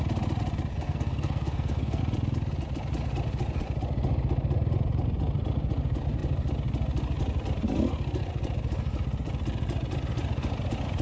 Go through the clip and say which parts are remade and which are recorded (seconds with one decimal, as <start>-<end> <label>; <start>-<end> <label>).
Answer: 0.0-0.7 recorded; 0.7-2.0 remade; 2.0-11.0 recorded